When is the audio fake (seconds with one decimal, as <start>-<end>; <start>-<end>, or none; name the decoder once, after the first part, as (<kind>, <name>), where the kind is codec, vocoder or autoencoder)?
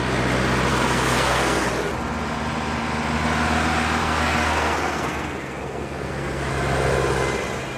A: 0.7-1.7 (codec, SNAC); 4.0-6.5